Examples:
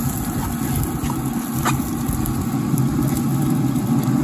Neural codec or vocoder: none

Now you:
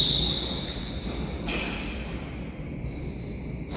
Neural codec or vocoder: vocoder, BigVGAN v2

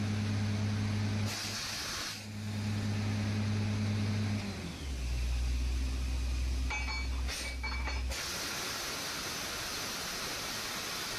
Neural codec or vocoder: none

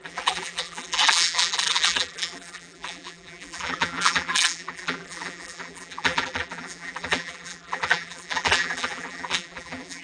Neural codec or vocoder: vocoder, BigVGAN v2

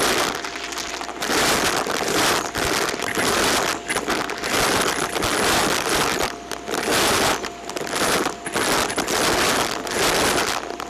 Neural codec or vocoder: none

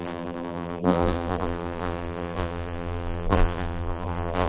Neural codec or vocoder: vocoder, BigVGAN v2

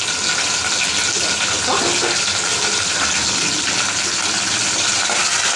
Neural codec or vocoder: none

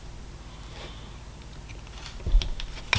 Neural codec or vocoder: none